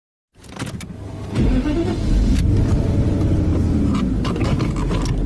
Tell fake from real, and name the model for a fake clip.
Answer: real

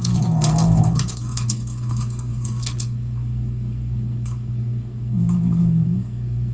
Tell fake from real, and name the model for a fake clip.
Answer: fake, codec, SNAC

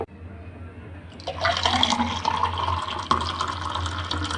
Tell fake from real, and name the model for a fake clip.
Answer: real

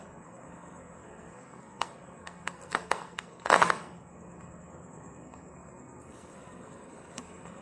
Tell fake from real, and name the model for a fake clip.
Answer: fake, codec, SNAC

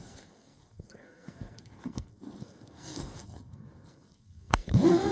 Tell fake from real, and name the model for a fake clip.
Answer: fake, codec, SNAC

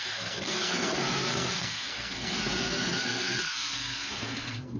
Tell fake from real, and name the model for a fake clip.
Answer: fake, codec, SNAC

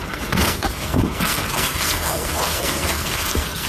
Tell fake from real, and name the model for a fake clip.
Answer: fake, codec, SNAC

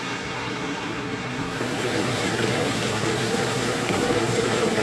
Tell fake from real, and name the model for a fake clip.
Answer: fake, codec, SNAC